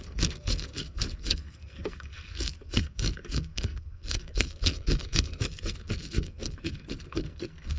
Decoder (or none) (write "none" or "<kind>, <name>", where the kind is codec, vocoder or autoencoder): codec, SNAC